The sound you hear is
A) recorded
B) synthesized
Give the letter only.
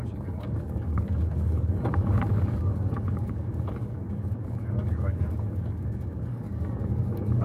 B